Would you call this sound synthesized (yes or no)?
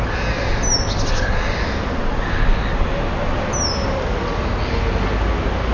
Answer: no